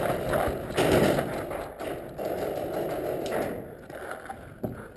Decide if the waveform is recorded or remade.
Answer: recorded